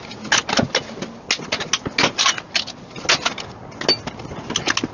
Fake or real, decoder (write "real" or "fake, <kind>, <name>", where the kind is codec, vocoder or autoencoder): real